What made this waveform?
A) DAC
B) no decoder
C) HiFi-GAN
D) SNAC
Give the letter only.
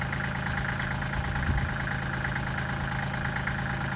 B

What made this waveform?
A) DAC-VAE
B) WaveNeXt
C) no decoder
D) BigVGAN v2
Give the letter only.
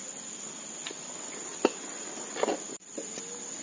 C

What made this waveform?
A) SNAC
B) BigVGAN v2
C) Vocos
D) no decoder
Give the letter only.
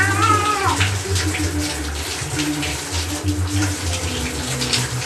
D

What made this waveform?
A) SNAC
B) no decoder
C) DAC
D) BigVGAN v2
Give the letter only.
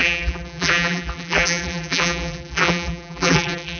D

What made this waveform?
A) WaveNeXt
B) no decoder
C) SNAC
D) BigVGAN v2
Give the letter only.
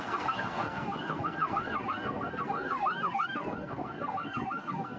C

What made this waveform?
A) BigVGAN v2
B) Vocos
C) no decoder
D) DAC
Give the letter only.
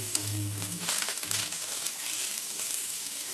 D